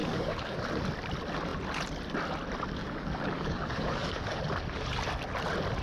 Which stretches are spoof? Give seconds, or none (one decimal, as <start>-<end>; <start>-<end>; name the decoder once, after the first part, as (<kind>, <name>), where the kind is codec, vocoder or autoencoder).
0.0-0.6 (codec, DAC); 2.8-4.4